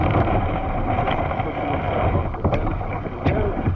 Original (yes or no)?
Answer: no